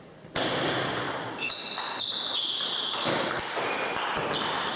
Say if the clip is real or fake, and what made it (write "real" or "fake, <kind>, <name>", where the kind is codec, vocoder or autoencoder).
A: real